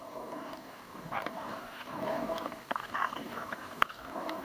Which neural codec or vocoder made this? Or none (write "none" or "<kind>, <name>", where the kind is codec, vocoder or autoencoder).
codec, DAC